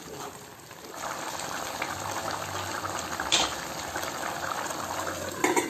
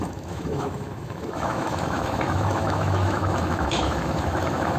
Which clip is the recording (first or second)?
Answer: first